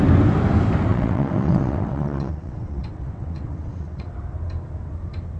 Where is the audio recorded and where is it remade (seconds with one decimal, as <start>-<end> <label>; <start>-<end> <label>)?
0.0-0.9 recorded; 0.9-4.1 remade; 4.1-5.4 recorded